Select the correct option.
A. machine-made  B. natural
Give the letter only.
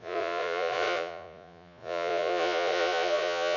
A